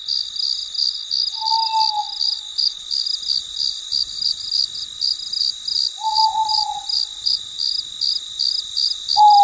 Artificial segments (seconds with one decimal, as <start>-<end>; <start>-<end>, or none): none